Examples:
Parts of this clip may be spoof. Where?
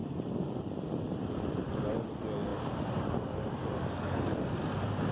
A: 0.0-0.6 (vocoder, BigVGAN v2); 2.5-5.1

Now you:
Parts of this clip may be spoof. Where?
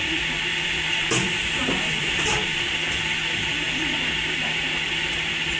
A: 0.5-1.1 (vocoder, BigVGAN v2); 2.5-3.8